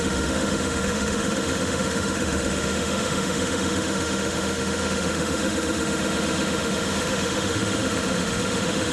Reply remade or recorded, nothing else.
remade